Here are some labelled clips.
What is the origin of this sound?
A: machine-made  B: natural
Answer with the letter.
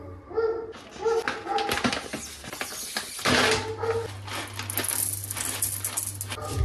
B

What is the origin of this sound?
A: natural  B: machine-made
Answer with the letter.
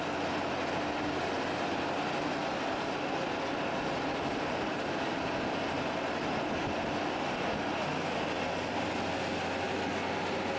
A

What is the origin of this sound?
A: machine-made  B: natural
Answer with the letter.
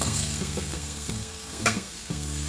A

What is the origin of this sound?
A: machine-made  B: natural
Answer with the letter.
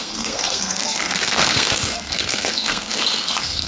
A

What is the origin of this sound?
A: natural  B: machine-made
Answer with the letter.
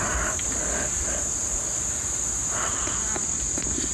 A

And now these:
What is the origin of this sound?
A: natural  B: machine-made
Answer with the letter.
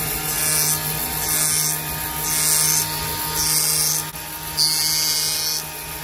A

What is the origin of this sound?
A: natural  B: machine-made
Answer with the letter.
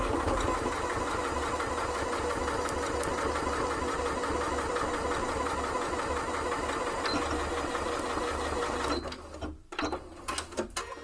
A